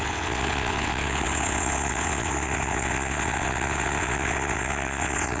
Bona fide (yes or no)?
no